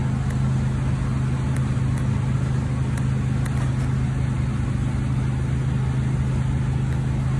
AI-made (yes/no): no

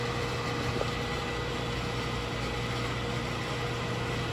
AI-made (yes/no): no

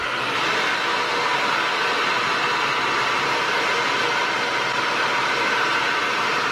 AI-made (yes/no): no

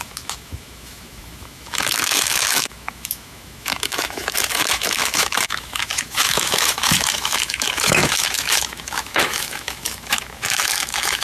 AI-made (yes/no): yes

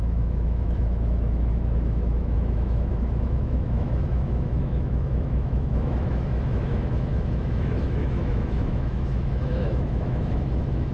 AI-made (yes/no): yes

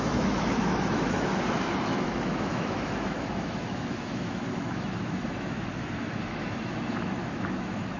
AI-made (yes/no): yes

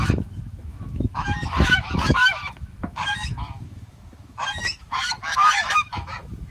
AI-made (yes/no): yes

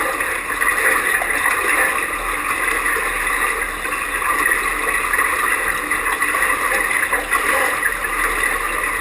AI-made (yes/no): no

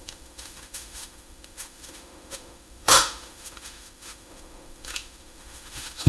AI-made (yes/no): yes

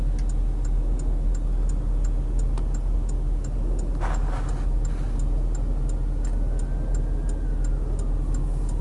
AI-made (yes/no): no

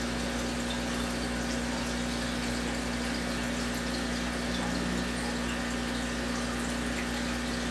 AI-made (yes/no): no